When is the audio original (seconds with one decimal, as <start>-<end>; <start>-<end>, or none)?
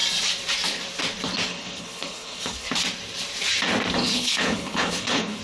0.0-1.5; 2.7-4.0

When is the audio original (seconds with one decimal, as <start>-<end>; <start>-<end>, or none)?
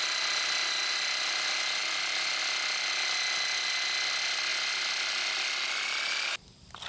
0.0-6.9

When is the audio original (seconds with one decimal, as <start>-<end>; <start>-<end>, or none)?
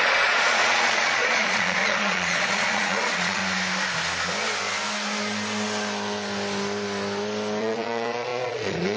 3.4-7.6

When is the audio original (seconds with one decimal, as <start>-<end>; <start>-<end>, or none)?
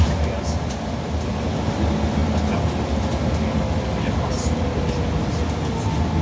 0.0-6.2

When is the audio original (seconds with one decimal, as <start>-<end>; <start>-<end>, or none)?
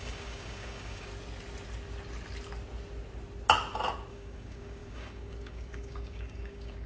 1.1-4.1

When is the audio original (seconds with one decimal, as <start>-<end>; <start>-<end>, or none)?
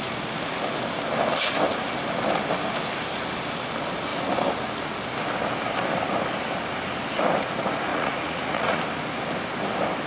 0.0-7.9; 8.8-10.1